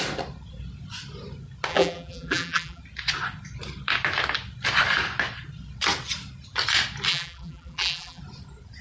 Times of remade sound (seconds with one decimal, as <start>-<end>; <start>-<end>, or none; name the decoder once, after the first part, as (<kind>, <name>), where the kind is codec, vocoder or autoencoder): 1.7-2.8 (vocoder, BigVGAN v2); 7.1-8.2